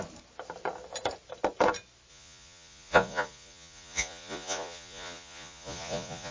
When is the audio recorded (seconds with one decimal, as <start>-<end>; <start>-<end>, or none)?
0.0-2.1